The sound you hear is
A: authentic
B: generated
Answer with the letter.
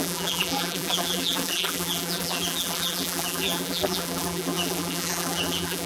B